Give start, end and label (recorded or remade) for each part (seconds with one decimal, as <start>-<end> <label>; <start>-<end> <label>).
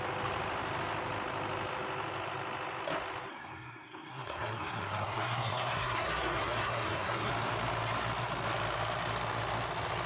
0.0-3.3 recorded; 3.3-7.3 remade; 7.3-10.1 recorded